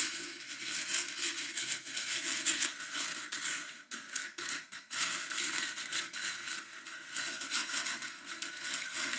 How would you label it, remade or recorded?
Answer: remade